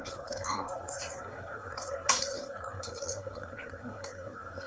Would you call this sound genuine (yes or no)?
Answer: no